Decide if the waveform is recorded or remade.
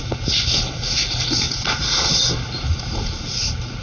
recorded